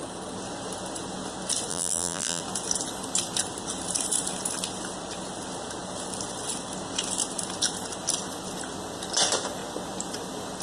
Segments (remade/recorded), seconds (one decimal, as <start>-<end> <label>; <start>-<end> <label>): 0.0-1.7 recorded; 1.7-2.4 remade; 2.4-10.6 recorded